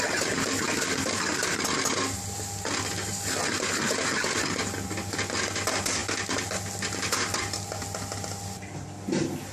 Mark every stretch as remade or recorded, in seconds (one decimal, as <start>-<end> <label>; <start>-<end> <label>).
0.0-9.5 recorded